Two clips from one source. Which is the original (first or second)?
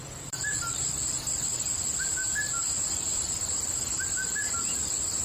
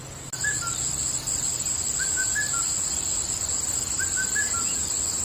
second